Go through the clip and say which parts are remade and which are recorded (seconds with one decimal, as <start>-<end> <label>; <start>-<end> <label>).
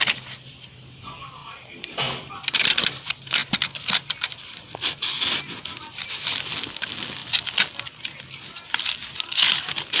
0.0-10.0 recorded